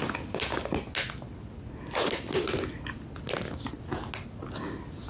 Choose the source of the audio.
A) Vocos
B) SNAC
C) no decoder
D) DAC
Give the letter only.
C